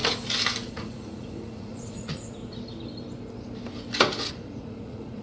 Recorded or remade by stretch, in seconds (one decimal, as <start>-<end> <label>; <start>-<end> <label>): 0.0-0.7 recorded; 0.7-2.4 remade; 2.4-4.3 recorded; 4.3-5.2 remade